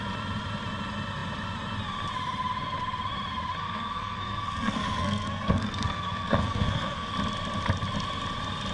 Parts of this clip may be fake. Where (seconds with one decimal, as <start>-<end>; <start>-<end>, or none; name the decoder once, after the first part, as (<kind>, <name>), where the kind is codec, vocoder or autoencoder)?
3.6-7.1 (codec, SNAC)